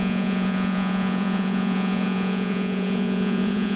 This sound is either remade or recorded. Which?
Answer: remade